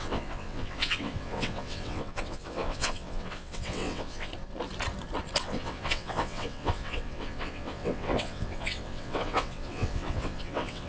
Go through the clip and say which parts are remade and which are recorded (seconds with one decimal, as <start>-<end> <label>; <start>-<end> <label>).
0.0-4.3 remade; 4.3-5.4 recorded; 5.4-10.9 remade